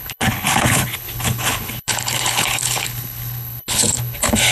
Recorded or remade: remade